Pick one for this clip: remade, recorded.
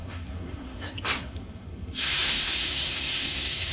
remade